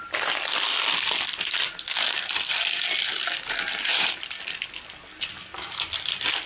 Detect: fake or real real